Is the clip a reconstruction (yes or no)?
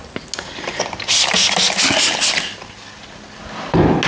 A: no